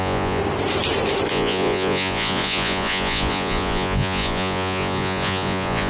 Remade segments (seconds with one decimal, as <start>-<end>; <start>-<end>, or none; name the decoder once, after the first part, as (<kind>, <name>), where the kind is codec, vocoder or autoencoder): 0.0-0.4 (vocoder, Vocos); 1.3-5.9